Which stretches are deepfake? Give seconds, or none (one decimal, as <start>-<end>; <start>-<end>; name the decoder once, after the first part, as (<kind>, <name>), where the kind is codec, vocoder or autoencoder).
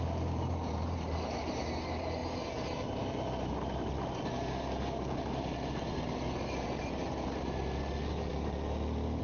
none